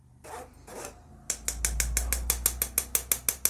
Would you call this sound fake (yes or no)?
no